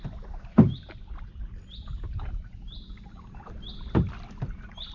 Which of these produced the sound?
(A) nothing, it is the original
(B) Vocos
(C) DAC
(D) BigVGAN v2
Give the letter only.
A